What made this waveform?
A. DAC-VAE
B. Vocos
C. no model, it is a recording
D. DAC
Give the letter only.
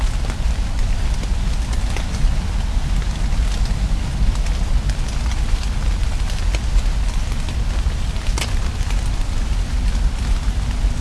C